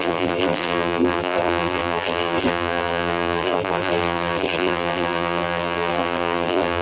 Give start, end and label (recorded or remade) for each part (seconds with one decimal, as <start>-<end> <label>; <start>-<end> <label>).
0.0-6.8 remade